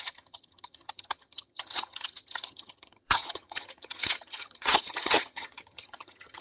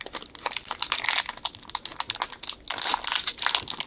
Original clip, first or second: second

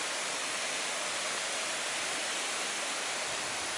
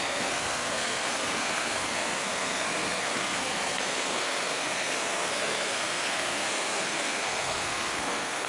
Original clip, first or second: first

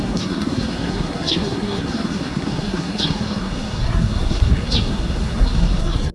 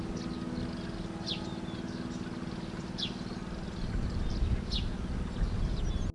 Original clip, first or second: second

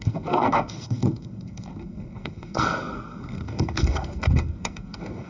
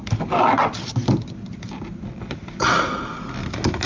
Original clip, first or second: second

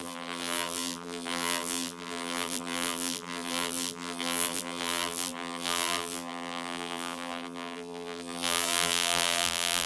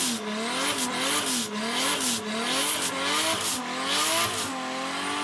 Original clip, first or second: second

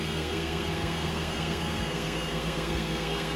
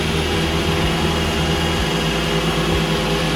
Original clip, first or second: second